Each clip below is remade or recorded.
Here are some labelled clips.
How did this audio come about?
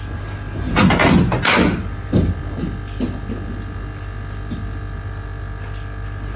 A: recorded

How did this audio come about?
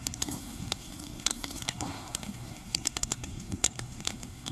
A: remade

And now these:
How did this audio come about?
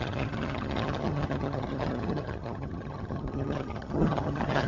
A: remade